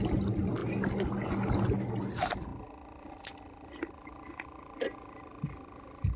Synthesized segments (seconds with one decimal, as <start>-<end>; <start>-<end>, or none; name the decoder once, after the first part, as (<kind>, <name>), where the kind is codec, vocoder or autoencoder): 0.0-0.6 (vocoder, BigVGAN v2); 2.1-2.5; 4.6-6.2